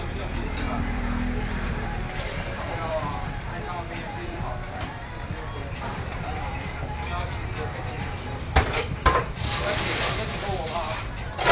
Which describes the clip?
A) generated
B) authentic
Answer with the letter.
A